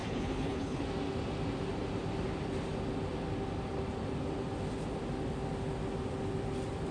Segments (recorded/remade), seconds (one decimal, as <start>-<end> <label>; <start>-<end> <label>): 0.0-0.8 remade; 0.8-6.9 recorded